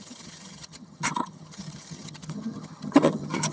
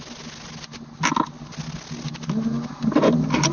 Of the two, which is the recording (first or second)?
second